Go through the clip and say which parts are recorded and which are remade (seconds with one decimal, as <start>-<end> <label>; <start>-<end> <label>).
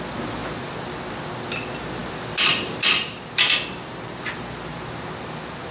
0.0-2.0 recorded; 2.0-4.9 remade; 4.9-5.7 recorded